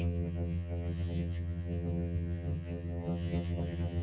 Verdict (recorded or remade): remade